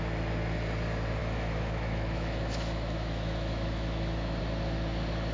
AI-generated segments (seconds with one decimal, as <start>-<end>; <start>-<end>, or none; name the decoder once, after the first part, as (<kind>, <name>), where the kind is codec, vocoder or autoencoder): 1.2-4.4 (autoencoder, DAC-VAE)